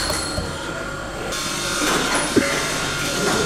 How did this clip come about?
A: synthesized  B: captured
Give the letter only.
B